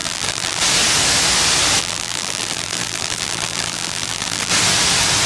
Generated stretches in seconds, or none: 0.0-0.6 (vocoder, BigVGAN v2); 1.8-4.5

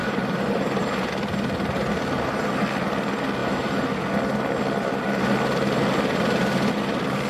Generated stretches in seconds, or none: 0.0-1.1 (vocoder, BigVGAN v2); 3.4-4.1

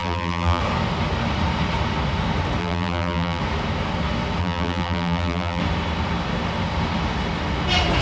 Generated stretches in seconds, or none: 0.0-0.6 (vocoder, BigVGAN v2); 2.6-3.4; 4.4-5.6